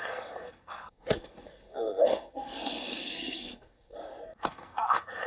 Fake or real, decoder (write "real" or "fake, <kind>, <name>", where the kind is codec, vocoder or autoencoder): fake, codec, SNAC